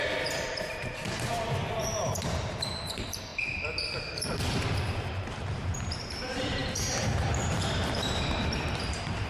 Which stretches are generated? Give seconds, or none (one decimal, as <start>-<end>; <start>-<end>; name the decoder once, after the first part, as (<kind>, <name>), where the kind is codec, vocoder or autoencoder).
0.0-1.3 (vocoder, BigVGAN v2); 2.1-3.3; 3.9-9.3